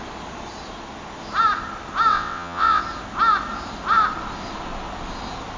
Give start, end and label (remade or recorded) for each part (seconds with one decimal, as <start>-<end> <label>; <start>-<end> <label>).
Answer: 0.0-2.1 recorded; 2.1-2.8 remade; 2.8-5.6 recorded